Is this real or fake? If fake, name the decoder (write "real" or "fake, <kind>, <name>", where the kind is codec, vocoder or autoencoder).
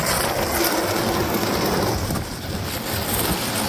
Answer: real